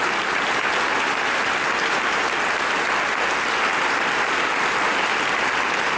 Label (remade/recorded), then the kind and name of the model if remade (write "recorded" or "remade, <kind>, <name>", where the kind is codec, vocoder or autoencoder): recorded